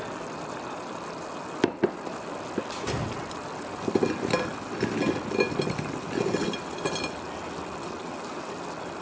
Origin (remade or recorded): recorded